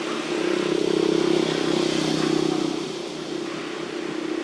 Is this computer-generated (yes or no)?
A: no